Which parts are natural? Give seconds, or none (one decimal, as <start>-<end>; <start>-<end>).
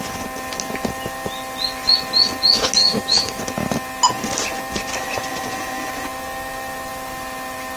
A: 0.0-2.8; 3.4-7.8